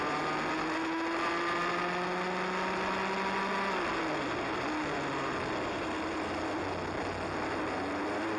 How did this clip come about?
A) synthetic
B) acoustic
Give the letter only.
B